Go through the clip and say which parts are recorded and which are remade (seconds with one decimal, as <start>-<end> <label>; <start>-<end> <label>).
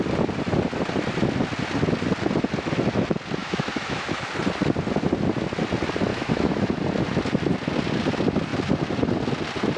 0.0-3.4 recorded; 3.4-4.3 remade; 4.3-6.1 recorded; 6.1-6.7 remade; 6.7-9.8 recorded